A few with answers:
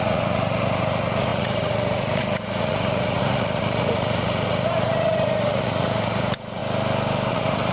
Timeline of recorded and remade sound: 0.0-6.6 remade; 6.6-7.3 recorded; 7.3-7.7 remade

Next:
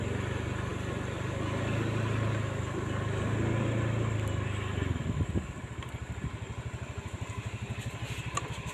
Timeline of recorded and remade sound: 0.0-8.7 recorded

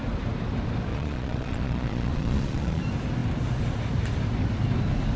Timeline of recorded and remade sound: 0.0-0.9 recorded; 0.9-2.8 remade; 2.8-5.2 recorded

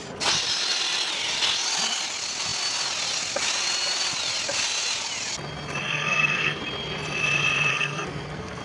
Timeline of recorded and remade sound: 0.0-5.8 recorded; 5.8-6.6 remade; 6.6-7.7 recorded; 7.7-8.6 remade

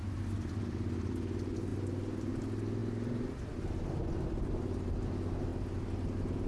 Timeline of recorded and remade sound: 0.0-6.5 recorded

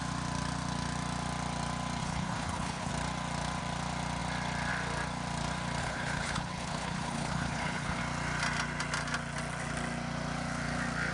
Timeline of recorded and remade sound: 0.0-2.0 recorded; 2.0-2.9 remade; 2.9-5.8 recorded; 5.8-8.0 remade; 8.0-11.1 recorded

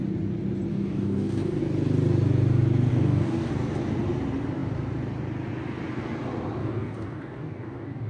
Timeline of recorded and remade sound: 0.0-0.7 recorded; 0.7-1.6 remade; 1.6-2.9 recorded; 2.9-3.5 remade; 3.5-6.6 recorded; 6.6-8.1 remade